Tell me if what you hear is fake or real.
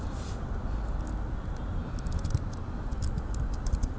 real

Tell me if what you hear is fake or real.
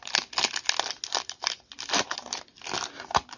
real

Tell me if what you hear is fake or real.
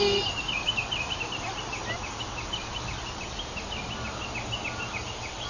real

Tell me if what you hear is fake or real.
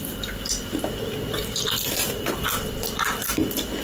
real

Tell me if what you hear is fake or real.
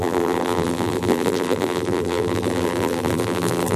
fake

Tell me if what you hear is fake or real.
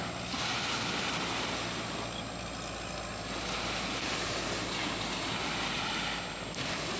real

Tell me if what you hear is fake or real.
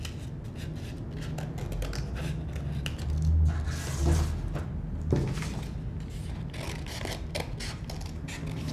real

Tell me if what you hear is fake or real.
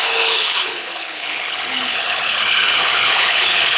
fake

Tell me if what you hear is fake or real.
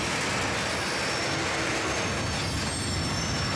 real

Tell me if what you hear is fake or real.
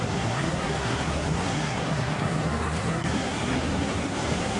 fake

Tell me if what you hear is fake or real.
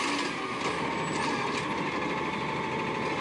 real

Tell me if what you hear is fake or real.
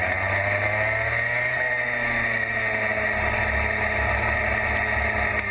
real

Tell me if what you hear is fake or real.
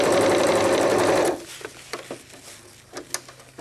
real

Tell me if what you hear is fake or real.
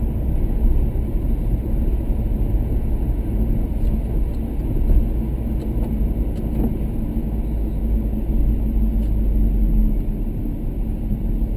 real